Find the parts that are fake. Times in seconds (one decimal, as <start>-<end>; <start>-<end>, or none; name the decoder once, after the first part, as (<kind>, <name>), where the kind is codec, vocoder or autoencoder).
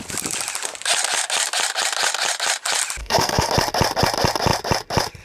3.0-3.5 (codec, SNAC)